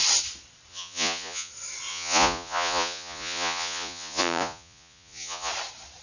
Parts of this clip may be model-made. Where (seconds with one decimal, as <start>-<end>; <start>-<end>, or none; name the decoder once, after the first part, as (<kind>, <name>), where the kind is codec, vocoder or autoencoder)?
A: 0.7-1.5 (vocoder, Vocos); 1.9-5.5